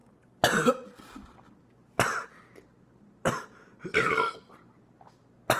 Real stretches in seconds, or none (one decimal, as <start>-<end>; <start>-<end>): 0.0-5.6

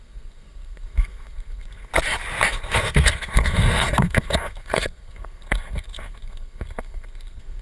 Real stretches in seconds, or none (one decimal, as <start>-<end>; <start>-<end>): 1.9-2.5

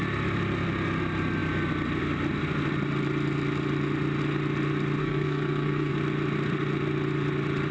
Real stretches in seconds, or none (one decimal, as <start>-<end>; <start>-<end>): 0.0-5.0; 5.9-7.7

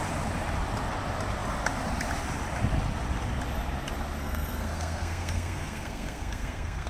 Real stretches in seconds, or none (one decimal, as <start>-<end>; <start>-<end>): 0.0-4.2

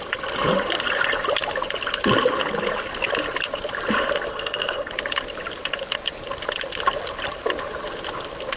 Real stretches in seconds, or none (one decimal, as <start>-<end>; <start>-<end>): 0.0-4.3; 4.9-8.6

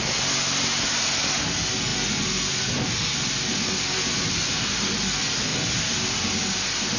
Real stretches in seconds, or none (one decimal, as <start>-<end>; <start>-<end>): 0.0-7.0